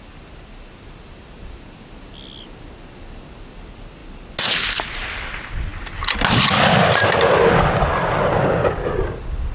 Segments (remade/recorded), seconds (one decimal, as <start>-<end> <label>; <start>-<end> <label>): 0.0-9.5 recorded